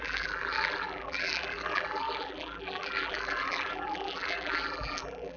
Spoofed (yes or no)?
yes